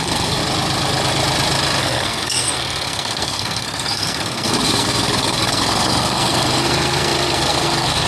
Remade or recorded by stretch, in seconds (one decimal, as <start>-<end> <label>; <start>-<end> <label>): 0.0-0.4 remade; 0.4-1.8 recorded; 1.8-8.1 remade